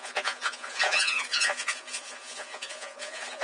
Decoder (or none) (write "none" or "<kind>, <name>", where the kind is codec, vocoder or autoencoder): vocoder, Vocos